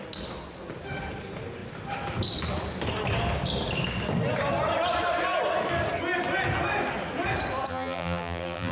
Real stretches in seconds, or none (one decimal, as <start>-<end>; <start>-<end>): 0.0-7.7